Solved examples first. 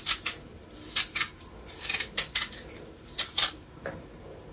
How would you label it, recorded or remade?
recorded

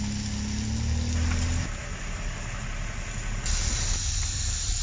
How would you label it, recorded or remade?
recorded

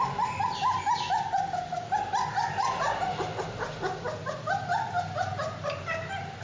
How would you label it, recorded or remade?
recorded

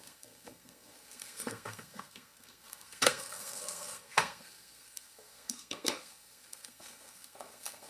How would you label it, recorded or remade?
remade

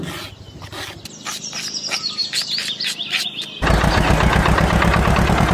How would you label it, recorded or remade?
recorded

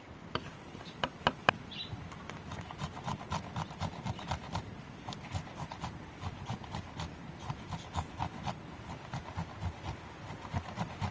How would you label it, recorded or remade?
recorded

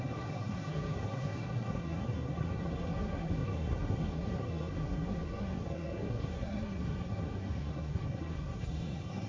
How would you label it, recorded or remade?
remade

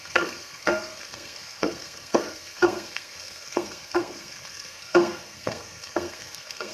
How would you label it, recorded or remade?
remade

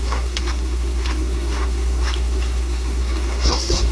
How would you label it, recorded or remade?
remade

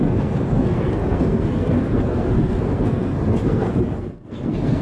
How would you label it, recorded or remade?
remade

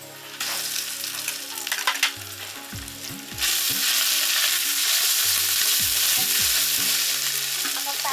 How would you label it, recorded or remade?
recorded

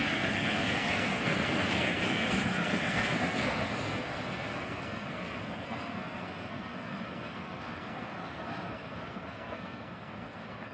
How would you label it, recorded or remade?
remade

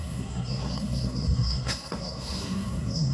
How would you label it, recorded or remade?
remade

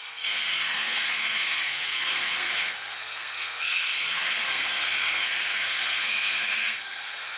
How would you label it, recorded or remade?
remade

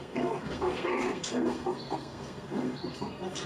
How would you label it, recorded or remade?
remade